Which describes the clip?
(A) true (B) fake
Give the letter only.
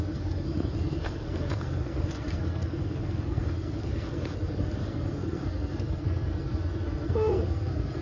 B